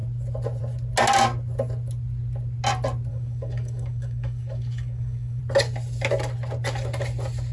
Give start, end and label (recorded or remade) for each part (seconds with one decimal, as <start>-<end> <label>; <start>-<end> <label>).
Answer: 0.0-3.1 recorded; 3.1-5.4 remade; 5.4-7.5 recorded